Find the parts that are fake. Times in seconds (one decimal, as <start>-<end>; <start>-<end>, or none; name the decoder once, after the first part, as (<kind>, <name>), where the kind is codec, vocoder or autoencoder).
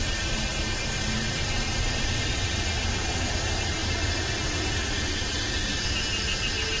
0.0-2.5 (vocoder, BigVGAN v2); 3.8-5.9